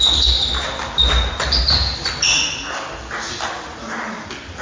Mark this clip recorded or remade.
recorded